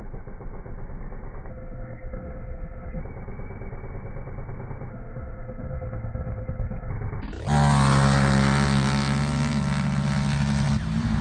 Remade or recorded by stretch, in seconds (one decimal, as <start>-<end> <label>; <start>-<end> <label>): 0.0-1.5 recorded; 1.5-3.0 remade; 3.0-4.9 recorded; 4.9-6.9 remade; 6.9-11.2 recorded